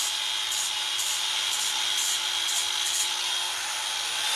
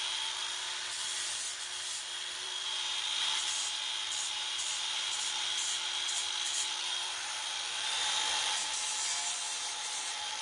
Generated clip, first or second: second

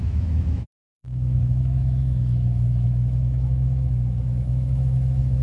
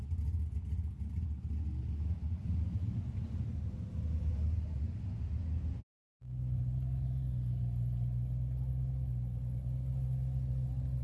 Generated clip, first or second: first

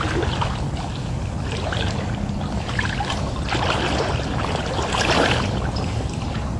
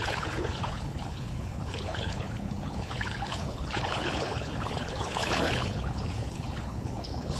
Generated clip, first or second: second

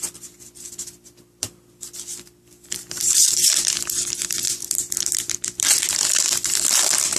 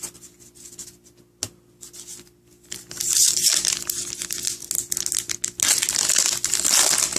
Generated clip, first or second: first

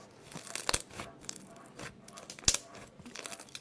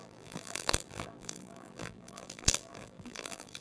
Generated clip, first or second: second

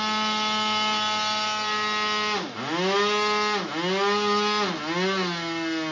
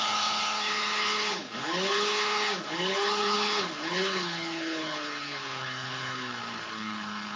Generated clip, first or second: second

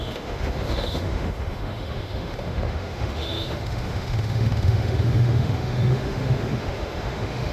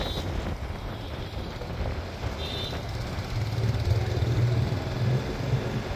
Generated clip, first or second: first